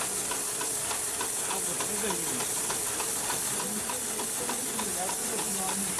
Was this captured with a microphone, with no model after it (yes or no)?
yes